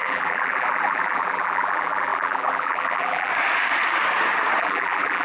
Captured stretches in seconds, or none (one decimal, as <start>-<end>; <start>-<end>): 3.3-4.6

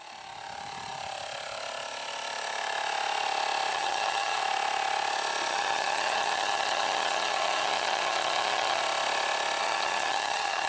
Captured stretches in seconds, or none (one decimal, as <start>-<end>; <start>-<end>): 0.0-3.7; 4.4-5.5; 8.8-9.6

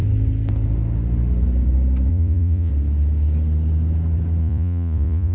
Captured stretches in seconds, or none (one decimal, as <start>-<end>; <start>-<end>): 0.0-2.1; 2.7-4.4

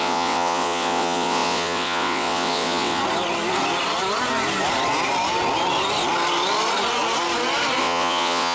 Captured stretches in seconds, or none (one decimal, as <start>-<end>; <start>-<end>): 3.0-7.8

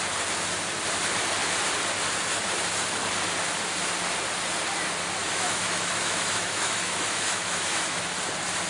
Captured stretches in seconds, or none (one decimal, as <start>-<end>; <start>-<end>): 0.0-5.2; 8.0-8.7

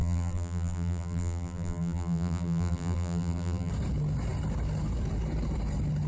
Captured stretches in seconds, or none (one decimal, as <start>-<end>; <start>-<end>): 3.7-6.1